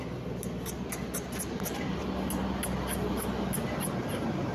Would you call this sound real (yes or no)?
yes